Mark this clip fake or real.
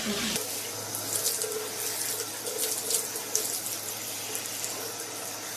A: real